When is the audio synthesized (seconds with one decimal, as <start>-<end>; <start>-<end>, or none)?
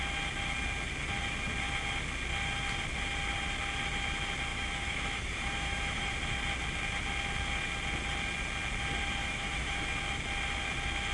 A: 4.5-6.1; 9.2-9.8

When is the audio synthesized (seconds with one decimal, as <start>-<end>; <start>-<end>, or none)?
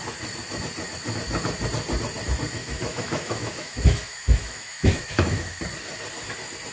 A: 2.6-5.6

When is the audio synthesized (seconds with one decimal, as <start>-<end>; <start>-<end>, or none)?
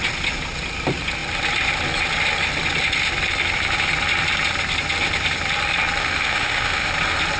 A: 6.0-6.9